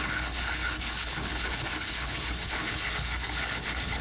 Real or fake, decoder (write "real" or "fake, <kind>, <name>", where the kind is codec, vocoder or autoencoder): fake, codec, HILCodec